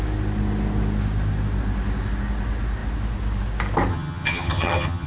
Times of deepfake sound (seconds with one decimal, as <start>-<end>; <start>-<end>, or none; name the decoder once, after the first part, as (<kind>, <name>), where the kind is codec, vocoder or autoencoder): 3.9-5.1 (vocoder, HiFi-GAN)